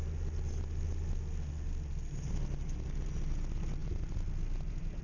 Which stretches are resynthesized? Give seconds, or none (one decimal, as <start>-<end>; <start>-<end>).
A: 3.8-5.0